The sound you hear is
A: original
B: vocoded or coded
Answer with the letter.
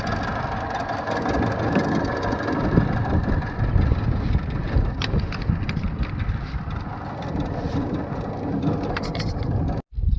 A